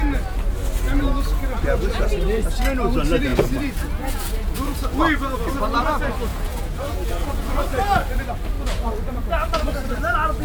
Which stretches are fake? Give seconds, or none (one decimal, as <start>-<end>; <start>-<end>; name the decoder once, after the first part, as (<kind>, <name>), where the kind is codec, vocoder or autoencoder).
3.3-5.0 (vocoder, Vocos); 6.3-7.1